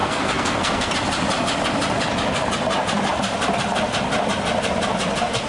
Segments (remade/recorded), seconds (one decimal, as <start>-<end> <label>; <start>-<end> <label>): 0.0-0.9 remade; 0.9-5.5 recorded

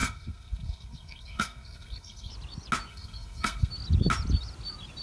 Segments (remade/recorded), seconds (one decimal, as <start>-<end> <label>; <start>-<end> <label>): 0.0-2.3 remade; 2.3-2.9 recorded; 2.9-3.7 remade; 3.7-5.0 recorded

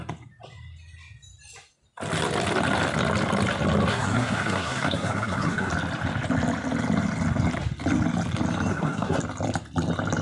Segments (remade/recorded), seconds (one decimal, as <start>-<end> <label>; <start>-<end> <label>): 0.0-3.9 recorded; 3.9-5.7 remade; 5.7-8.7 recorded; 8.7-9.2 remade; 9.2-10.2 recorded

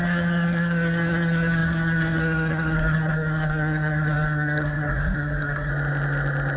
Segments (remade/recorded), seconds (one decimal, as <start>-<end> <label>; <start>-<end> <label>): 0.0-5.7 remade; 5.7-6.6 recorded